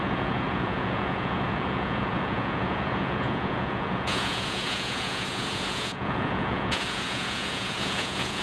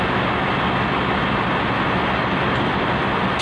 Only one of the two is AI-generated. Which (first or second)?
first